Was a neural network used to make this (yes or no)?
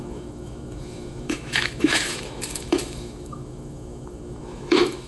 yes